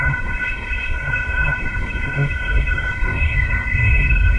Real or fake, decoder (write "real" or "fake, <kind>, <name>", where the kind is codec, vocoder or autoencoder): fake, codec, SNAC